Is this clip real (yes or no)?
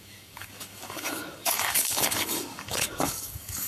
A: no